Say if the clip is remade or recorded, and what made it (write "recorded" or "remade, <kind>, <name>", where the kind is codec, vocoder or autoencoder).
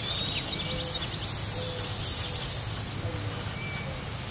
recorded